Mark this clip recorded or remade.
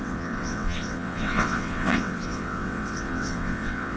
remade